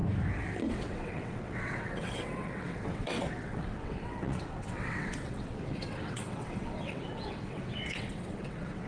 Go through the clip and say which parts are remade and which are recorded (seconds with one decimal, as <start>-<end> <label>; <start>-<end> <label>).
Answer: 0.0-0.7 recorded; 0.7-8.9 remade